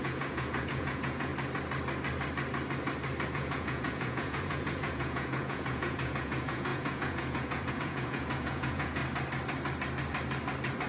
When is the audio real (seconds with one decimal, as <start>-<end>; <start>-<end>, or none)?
1.3-3.3; 9.0-10.9